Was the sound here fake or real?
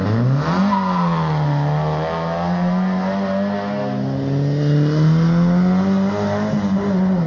real